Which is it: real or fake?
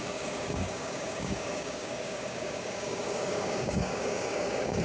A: fake